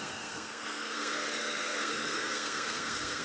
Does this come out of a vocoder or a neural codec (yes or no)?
yes